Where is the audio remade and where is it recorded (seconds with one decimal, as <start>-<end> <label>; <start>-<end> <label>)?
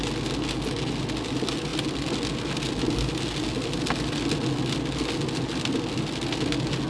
0.0-6.9 recorded